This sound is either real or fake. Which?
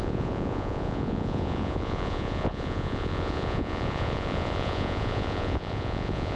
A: fake